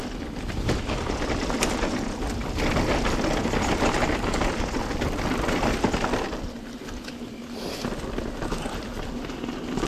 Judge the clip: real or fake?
real